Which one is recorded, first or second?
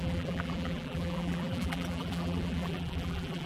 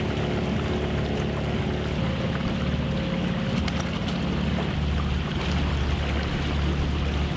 second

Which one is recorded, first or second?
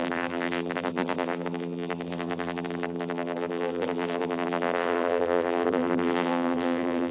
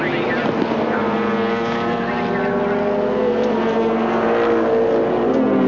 second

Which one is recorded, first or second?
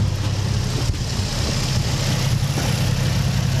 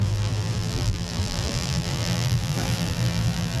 first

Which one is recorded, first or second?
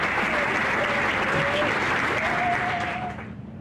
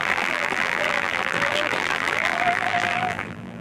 first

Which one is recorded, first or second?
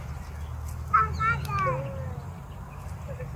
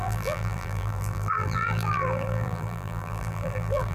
first